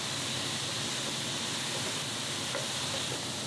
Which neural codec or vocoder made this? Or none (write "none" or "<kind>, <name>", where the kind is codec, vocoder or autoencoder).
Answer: none